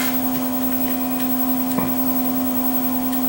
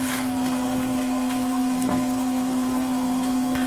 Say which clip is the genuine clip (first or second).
first